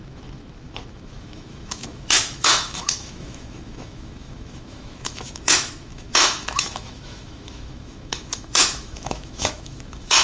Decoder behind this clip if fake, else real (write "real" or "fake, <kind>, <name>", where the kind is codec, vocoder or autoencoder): fake, autoencoder, DAC-VAE